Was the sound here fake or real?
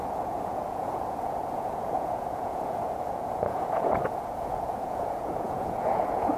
fake